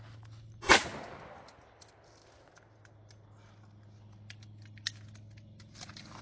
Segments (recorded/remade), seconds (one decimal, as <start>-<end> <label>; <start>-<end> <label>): 0.0-6.2 recorded